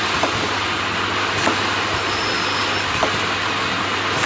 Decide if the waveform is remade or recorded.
recorded